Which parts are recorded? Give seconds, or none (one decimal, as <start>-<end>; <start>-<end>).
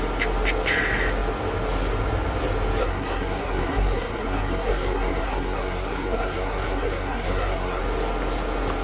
0.0-2.8; 7.8-8.8